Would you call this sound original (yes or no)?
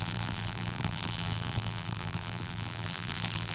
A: no